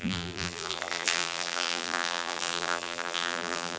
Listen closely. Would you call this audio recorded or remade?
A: remade